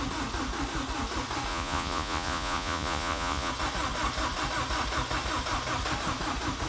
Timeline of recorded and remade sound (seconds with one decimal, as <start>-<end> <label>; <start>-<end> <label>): 0.0-1.5 recorded; 1.5-3.5 remade; 3.5-6.7 recorded